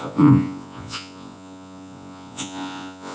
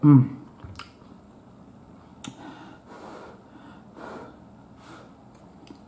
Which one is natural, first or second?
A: second